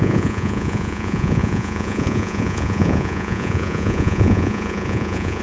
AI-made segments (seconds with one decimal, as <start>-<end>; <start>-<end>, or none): 0.0-5.4